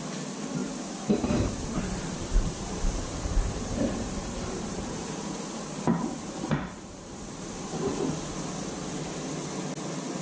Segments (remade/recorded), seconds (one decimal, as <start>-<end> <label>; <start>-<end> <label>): 0.0-0.6 recorded; 0.6-5.5 remade; 5.5-5.9 recorded; 5.9-7.9 remade; 7.9-10.2 recorded